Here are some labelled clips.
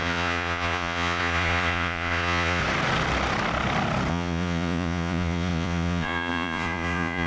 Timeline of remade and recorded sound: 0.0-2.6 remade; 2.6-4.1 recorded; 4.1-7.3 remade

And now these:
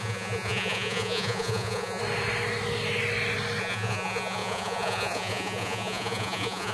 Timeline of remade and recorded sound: 0.0-2.0 remade; 2.0-3.6 recorded; 3.6-6.7 remade

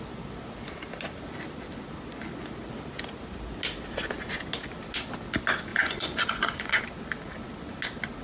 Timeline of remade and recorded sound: 0.0-5.7 recorded; 5.7-6.8 remade; 6.8-8.2 recorded

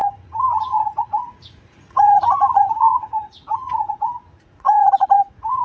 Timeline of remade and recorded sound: 0.0-5.6 remade